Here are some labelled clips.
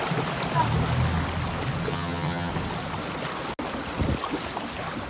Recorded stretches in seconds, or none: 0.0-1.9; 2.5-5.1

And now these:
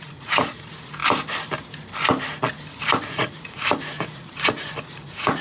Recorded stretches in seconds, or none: 1.0-3.0

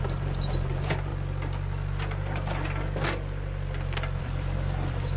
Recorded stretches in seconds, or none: 1.1-4.2

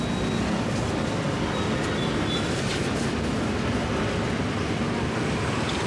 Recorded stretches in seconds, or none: 0.0-5.9

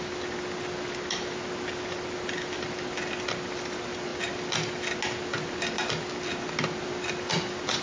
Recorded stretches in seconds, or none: 0.0-7.8

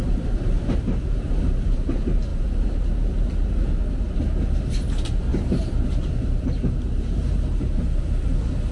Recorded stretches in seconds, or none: none

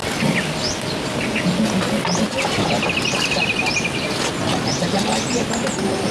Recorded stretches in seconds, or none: 0.0-6.1

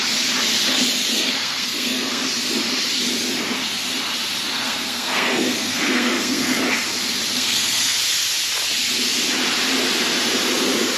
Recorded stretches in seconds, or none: 0.0-1.1; 2.2-4.5; 6.6-7.3; 8.0-11.0